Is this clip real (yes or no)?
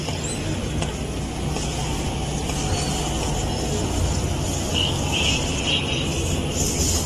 no